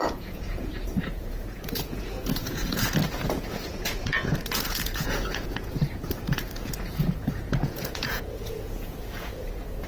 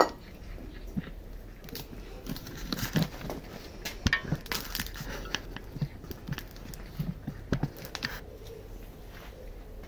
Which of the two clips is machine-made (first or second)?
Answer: first